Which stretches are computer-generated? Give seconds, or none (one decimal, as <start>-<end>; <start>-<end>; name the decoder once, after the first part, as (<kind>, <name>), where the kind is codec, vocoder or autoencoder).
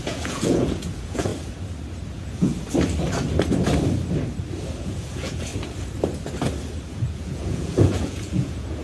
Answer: 0.0-1.3 (vocoder, Vocos); 2.1-2.5; 4.8-5.5; 6.9-8.8